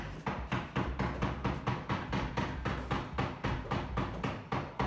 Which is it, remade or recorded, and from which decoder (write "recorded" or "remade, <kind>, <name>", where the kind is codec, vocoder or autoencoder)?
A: recorded